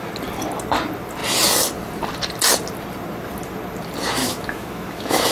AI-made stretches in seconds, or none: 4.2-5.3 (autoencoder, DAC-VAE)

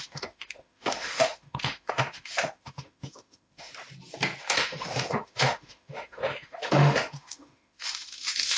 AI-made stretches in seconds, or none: 0.0-3.7 (autoencoder, DAC-VAE); 4.4-8.6

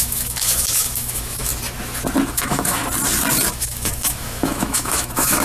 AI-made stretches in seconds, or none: 0.0-1.5 (autoencoder, DAC-VAE); 2.3-2.8; 3.5-5.4